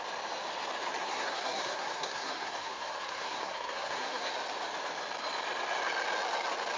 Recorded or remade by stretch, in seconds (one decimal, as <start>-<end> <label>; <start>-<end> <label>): 0.0-1.0 recorded; 1.0-4.3 remade; 4.3-6.8 recorded